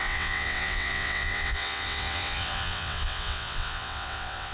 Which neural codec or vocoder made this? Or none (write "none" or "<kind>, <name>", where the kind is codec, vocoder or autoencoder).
vocoder, WaveNeXt